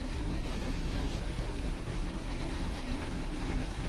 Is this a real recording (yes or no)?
no